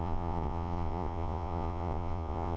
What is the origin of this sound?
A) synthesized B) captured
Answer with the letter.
A